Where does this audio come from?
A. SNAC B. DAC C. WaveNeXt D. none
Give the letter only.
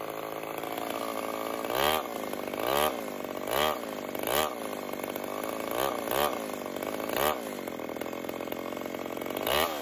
D